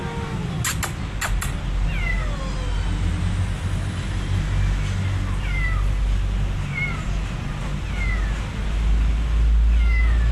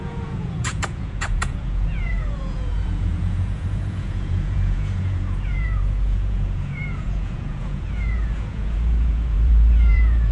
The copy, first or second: second